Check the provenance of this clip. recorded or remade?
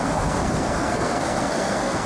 remade